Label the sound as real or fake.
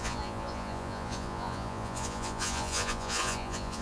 fake